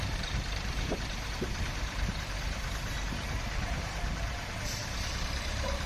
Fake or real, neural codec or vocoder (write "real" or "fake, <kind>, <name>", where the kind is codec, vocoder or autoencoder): fake, vocoder, BigVGAN v2